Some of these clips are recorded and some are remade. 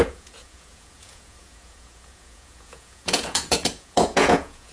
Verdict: remade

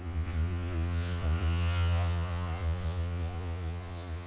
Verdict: remade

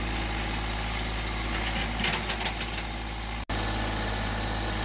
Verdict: recorded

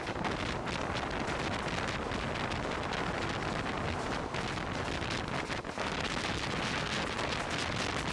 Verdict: recorded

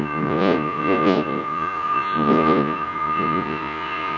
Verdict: remade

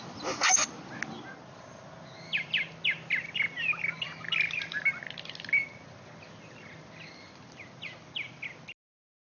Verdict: recorded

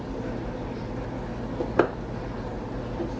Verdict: recorded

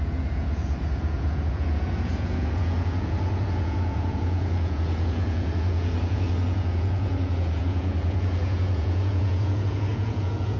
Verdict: remade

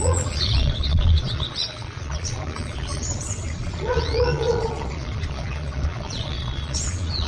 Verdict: remade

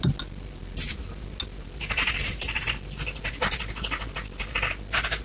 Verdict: recorded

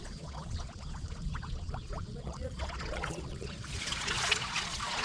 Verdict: remade